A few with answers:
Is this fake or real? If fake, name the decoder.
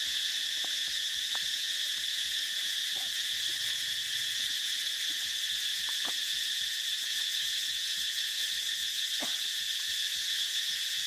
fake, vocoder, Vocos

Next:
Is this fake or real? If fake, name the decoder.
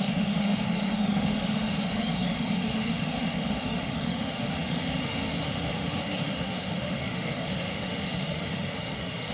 fake, autoencoder, DAC-VAE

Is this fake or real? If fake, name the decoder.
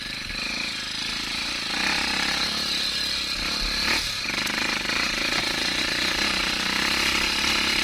real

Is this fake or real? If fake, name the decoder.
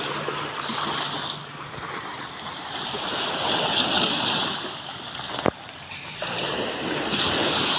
real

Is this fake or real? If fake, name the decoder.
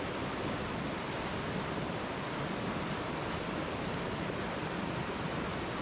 real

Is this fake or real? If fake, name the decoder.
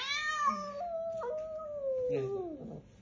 real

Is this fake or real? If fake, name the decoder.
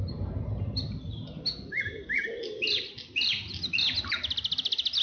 real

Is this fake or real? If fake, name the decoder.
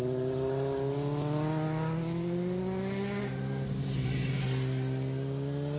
real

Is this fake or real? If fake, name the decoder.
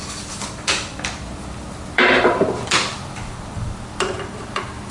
fake, vocoder, BigVGAN v2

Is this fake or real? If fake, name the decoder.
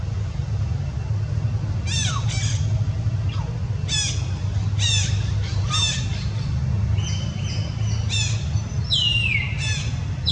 real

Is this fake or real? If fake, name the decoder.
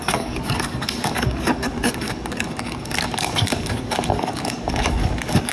fake, codec, DAC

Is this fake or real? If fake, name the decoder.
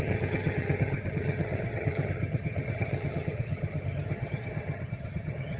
fake, vocoder, HiFi-GAN